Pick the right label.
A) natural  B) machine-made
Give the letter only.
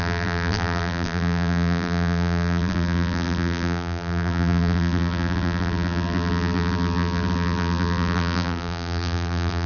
B